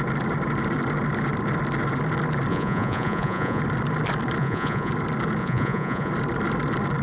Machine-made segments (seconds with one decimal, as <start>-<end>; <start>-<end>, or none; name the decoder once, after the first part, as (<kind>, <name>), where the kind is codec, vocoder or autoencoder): 2.5-3.6 (vocoder, Vocos); 4.4-4.9; 5.4-6.1